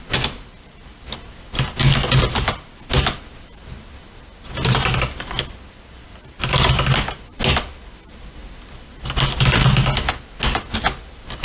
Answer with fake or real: real